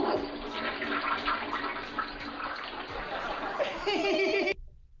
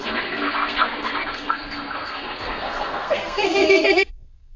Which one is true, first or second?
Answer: first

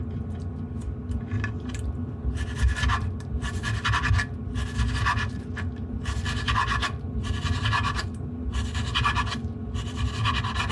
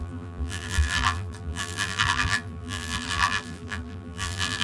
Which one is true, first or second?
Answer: first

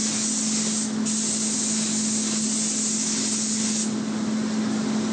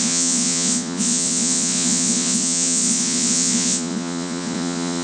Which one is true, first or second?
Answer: first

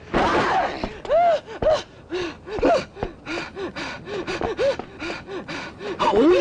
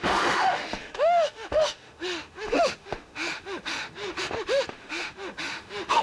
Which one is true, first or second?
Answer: first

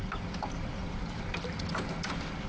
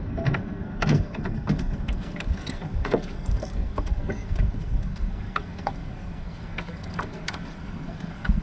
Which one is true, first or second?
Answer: first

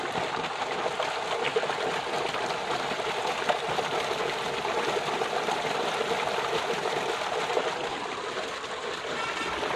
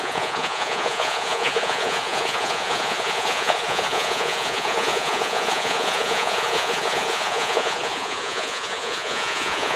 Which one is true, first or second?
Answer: first